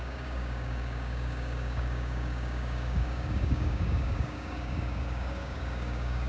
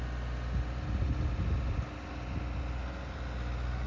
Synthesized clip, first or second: first